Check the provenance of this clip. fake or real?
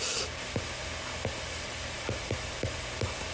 real